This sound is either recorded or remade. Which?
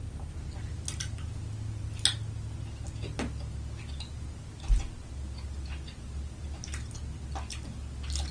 recorded